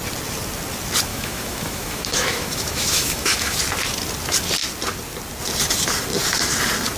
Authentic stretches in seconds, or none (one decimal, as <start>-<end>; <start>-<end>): 0.0-1.1; 3.6-7.0